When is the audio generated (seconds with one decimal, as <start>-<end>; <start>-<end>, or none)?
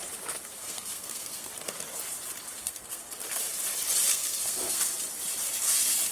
0.5-1.5; 2.6-3.4; 4.1-4.9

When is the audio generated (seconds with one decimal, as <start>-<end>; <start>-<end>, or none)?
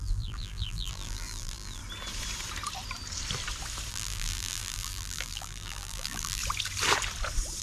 0.0-1.8; 3.9-6.4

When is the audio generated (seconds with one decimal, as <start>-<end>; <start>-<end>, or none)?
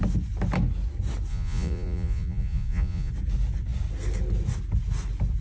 1.3-3.1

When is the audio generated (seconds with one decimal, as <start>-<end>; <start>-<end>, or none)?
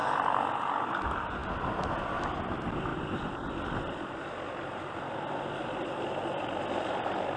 none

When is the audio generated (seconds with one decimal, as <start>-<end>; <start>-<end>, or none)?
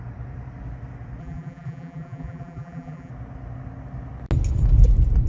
1.2-3.1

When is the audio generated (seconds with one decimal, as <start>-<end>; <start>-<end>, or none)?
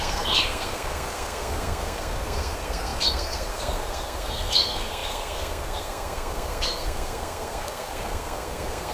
0.0-8.9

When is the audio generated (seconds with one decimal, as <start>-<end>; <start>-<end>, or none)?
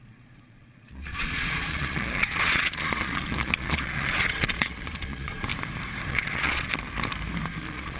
0.0-5.5; 6.1-6.7; 7.6-8.0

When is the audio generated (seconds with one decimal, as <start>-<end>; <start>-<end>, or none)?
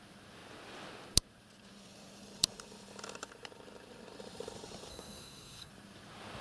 4.9-5.7